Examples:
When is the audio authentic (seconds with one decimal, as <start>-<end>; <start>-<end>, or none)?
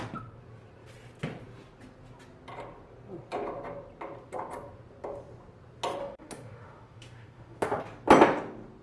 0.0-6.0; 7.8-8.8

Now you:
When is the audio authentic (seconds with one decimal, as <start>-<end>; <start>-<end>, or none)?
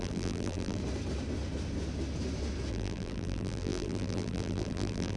0.8-2.7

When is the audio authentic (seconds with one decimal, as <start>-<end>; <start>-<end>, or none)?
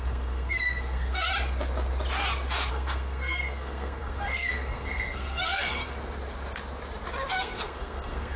1.3-2.7; 5.8-7.4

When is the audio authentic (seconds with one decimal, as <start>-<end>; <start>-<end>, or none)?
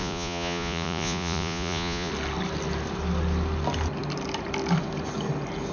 2.1-5.7